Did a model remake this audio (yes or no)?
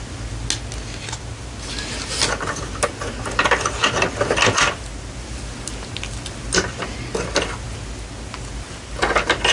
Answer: no